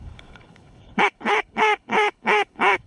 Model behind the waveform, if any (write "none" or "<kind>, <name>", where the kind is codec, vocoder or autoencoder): codec, HILCodec